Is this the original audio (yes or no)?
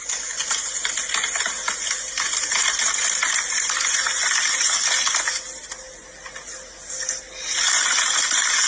yes